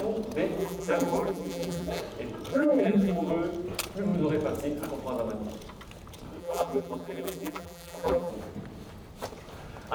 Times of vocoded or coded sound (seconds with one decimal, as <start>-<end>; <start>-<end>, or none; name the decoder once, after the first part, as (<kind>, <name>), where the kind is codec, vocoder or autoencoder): 0.6-2.0 (vocoder, BigVGAN v2); 2.5-3.3; 6.4-8.3